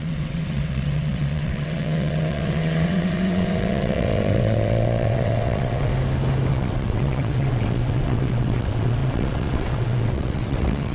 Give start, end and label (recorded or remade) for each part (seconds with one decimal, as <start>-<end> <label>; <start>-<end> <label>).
0.0-5.9 remade; 5.9-6.5 recorded; 6.5-10.9 remade